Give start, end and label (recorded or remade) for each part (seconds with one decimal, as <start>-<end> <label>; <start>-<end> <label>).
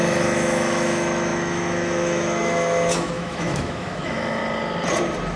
0.0-4.4 remade; 4.4-5.4 recorded